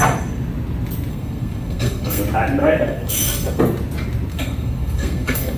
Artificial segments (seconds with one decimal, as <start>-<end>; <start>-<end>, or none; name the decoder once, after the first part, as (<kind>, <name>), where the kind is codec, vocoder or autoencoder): 1.1-2.2 (codec, SNAC); 2.6-3.6; 4.3-5.6